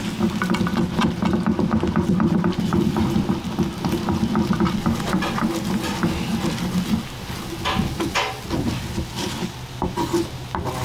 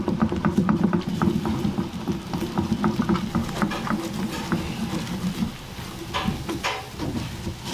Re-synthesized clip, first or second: second